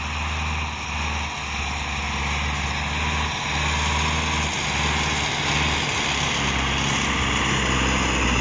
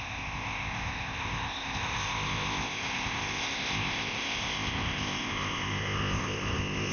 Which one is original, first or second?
first